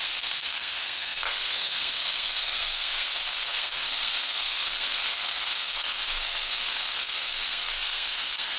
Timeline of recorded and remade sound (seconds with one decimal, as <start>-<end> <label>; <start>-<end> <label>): 0.0-8.6 remade